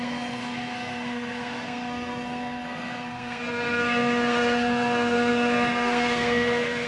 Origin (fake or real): fake